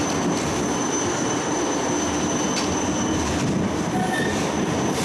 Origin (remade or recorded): recorded